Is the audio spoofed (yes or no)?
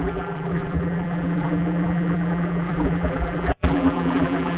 yes